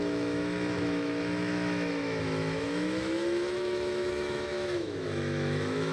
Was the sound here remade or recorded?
remade